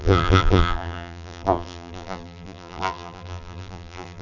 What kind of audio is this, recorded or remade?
remade